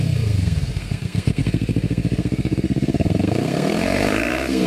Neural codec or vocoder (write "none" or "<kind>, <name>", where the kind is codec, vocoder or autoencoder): codec, SNAC